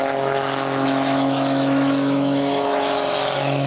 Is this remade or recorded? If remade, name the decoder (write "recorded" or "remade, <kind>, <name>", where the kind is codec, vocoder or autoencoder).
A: remade, autoencoder, DAC-VAE